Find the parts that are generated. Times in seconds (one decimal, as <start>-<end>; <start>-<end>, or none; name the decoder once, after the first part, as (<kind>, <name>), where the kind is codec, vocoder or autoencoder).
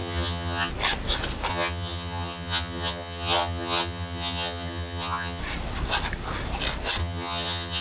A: 0.0-0.7 (vocoder, HiFi-GAN); 1.5-5.4; 7.0-7.8